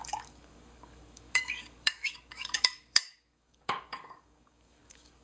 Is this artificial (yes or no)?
yes